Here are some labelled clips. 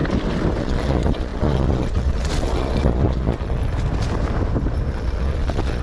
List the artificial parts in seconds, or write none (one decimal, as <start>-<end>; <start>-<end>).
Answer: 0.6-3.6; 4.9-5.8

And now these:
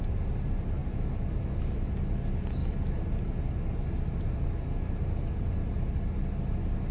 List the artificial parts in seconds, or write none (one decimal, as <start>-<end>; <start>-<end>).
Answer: none

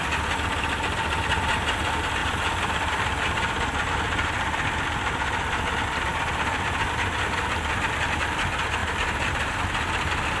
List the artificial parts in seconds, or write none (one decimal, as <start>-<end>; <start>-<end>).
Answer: 2.2-4.3; 6.1-8.2

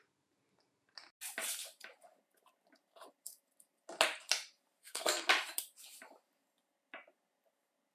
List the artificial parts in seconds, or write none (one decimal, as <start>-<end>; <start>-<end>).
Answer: 4.8-5.3